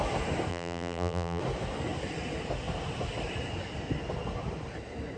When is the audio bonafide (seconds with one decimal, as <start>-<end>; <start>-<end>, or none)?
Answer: 0.0-0.5; 1.4-5.2